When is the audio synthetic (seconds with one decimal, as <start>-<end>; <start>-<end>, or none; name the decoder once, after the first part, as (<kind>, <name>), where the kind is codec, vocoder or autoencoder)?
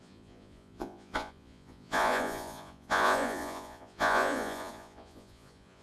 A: 0.0-5.8 (vocoder, Vocos)